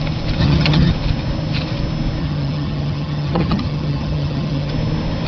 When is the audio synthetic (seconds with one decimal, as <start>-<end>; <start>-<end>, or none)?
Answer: 0.4-0.9; 2.2-4.7

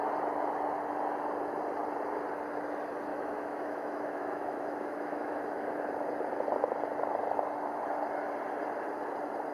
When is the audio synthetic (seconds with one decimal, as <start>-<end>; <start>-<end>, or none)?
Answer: 3.1-5.8